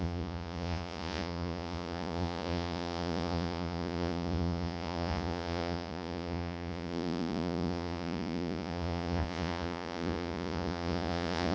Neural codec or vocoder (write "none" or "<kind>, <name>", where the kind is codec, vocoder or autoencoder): vocoder, Vocos